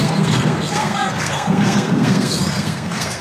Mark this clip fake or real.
fake